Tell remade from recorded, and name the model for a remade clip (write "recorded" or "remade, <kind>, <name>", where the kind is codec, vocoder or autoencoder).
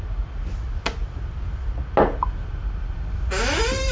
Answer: recorded